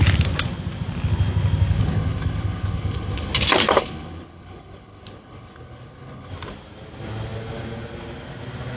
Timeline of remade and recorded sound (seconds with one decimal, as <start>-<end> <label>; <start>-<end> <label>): 0.0-1.8 recorded; 1.8-3.3 remade; 3.3-3.8 recorded; 3.8-6.3 remade; 6.3-8.8 recorded